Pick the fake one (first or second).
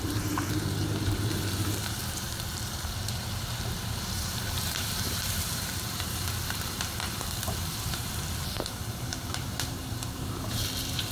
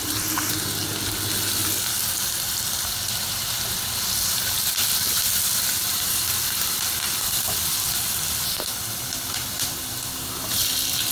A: first